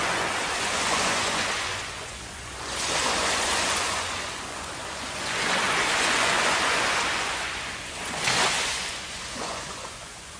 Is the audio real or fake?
fake